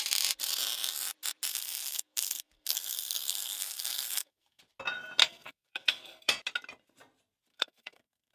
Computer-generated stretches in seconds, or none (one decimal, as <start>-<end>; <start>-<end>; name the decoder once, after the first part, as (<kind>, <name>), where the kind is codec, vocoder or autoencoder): 1.5-4.6 (codec, SNAC); 5.2-6.4; 7.5-8.3